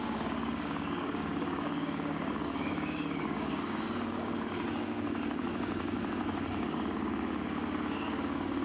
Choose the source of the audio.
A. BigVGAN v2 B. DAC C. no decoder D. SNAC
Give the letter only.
B